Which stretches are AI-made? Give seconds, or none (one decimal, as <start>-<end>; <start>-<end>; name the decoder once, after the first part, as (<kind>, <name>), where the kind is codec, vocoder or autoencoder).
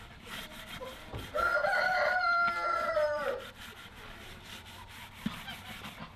0.0-6.2 (vocoder, BigVGAN v2)